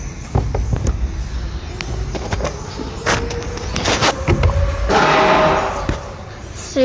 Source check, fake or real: real